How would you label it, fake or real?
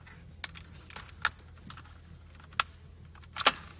real